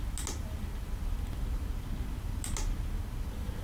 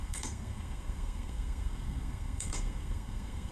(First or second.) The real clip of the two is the first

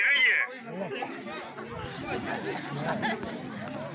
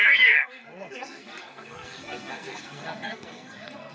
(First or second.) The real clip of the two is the first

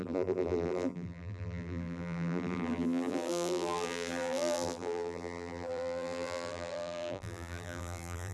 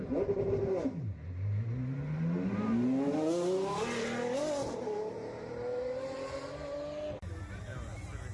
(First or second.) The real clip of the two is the second